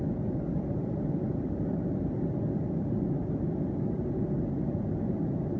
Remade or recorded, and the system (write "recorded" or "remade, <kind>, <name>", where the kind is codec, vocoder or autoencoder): recorded